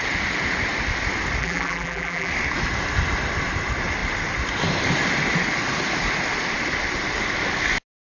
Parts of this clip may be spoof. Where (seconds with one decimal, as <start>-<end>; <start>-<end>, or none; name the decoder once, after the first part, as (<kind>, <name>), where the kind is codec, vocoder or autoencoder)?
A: 1.4-2.3 (vocoder, BigVGAN v2)